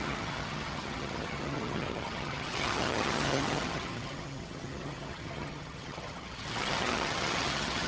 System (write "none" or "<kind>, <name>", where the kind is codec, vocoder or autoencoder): vocoder, HiFi-GAN